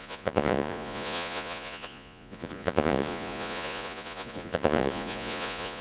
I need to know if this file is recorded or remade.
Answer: remade